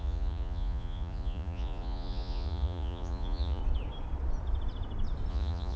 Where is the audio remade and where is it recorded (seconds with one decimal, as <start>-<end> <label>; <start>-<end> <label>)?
0.0-3.6 remade; 3.6-5.3 recorded; 5.3-5.8 remade